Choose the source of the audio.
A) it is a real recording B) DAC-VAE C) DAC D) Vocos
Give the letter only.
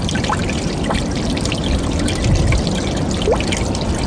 A